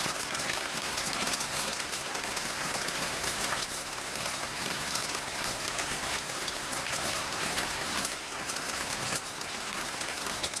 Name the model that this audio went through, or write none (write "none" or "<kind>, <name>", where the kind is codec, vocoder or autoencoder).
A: codec, SNAC